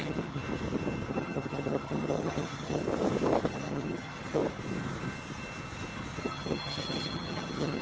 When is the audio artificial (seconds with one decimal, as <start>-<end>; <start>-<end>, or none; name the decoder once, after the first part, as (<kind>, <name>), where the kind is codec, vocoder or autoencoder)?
0.0-0.4 (vocoder, HiFi-GAN); 1.1-2.8; 3.5-4.4; 6.2-7.8